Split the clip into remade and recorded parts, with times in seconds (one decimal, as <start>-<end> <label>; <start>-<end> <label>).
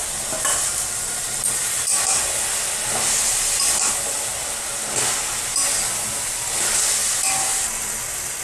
0.0-8.4 recorded